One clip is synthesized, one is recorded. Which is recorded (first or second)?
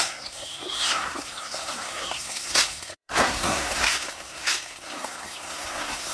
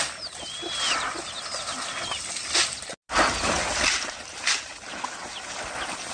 second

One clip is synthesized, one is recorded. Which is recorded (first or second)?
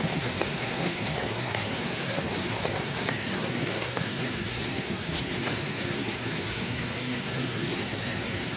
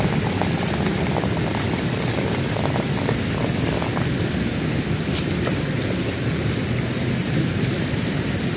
second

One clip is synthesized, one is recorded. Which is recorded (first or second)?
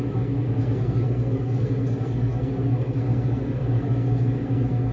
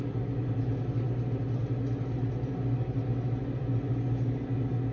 second